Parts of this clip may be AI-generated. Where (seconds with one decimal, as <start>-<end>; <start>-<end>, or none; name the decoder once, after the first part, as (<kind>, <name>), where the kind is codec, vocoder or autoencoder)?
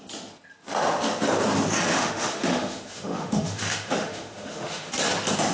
1.9-4.9 (autoencoder, DAC-VAE)